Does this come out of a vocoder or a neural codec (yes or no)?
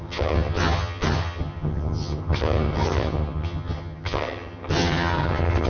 yes